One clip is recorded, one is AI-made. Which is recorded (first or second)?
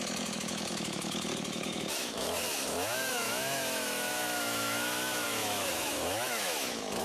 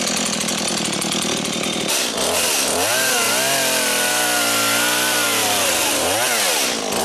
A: second